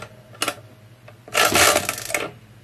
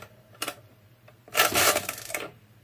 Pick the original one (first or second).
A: first